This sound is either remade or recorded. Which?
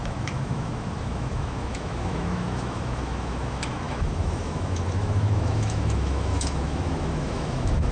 remade